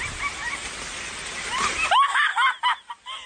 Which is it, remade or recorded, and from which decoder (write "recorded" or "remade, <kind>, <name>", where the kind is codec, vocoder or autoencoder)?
recorded